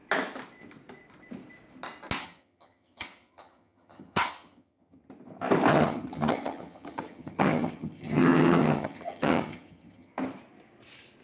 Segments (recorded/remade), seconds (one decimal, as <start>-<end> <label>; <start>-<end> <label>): 0.0-2.2 recorded; 2.2-5.0 remade; 5.0-5.7 recorded; 5.7-10.1 remade; 10.1-11.2 recorded